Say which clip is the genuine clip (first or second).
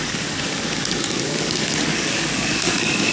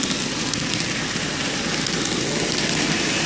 second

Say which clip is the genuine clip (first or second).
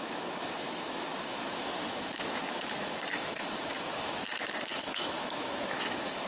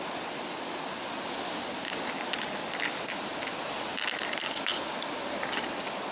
second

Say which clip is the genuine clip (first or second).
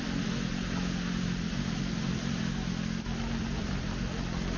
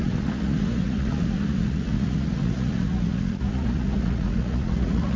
first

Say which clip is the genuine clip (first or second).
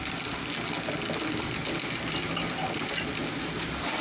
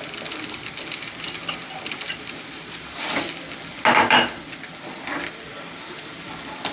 first